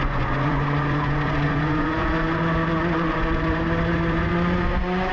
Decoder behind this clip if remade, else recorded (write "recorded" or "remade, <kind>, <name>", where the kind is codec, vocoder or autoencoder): remade, vocoder, Vocos